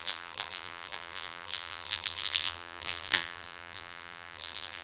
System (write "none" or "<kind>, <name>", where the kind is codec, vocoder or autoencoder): vocoder, BigVGAN v2